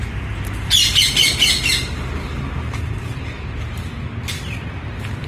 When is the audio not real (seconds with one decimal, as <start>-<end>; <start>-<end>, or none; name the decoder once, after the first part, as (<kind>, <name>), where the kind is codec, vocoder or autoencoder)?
0.0-0.8 (vocoder, BigVGAN v2); 3.0-3.9; 4.7-5.3